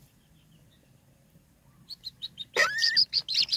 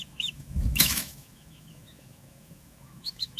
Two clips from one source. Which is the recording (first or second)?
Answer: first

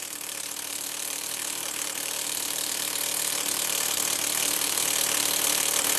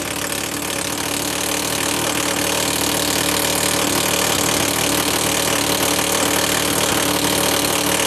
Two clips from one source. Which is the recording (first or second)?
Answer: second